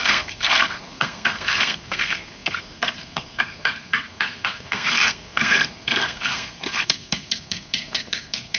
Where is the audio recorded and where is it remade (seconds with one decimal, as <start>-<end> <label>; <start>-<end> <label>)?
0.0-8.6 remade